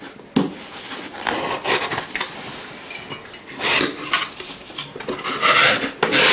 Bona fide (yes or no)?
yes